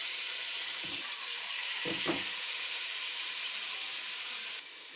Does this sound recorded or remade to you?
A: remade